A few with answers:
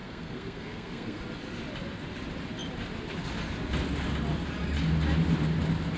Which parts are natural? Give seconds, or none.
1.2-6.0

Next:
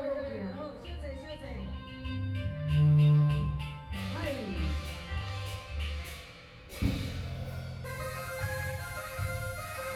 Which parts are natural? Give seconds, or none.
6.7-8.1

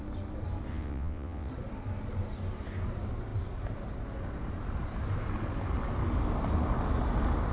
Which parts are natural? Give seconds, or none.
0.0-0.7; 1.5-7.5

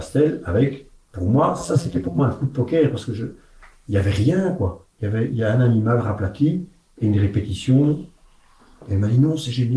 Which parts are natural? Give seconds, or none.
0.0-1.6; 2.2-9.8

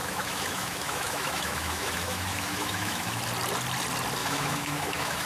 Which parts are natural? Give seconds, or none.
3.2-4.2

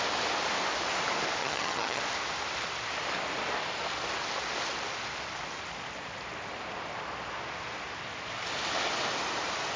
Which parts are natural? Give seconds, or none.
0.0-1.4; 2.0-9.8